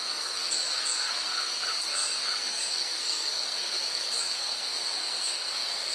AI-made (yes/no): yes